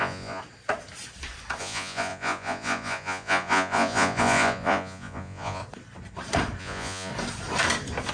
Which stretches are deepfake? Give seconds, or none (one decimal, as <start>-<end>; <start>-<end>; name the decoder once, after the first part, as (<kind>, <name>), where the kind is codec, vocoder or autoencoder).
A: 0.0-0.4 (vocoder, Vocos); 1.6-5.6; 6.6-7.1